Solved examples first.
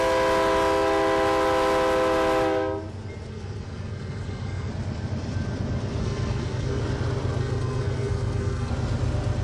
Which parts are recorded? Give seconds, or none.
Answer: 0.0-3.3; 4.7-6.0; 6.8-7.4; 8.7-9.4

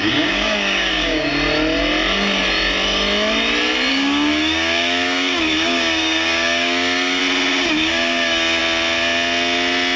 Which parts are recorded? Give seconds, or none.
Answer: 1.3-3.9; 7.2-7.7; 8.6-10.0